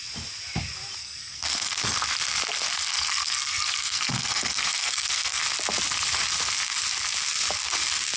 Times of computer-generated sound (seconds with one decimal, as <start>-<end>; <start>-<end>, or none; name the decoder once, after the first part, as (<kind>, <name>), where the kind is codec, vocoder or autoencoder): 1.0-2.0 (codec, SNAC); 2.9-5.4